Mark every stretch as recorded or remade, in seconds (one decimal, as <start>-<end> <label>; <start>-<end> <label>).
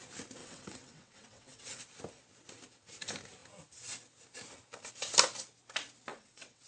0.0-0.4 recorded; 0.4-1.8 remade; 1.8-6.1 recorded; 6.1-6.7 remade